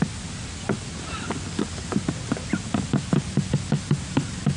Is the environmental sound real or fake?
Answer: real